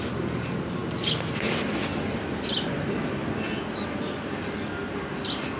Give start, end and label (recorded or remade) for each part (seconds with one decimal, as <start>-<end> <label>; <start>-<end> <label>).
0.0-5.6 recorded